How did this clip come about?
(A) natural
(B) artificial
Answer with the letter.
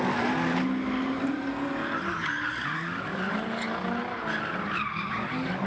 A